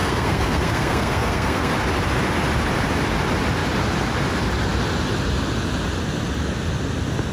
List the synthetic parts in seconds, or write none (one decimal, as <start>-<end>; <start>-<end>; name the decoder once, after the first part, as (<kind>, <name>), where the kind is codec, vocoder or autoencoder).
0.0-1.7 (codec, SNAC)